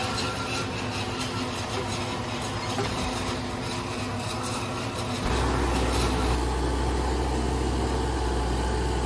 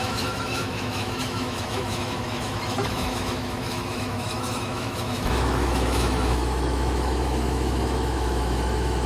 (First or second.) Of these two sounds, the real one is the first